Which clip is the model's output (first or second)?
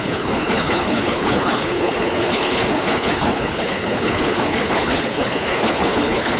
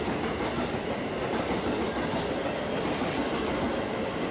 first